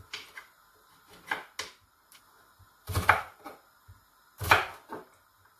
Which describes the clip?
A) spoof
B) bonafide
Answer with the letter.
B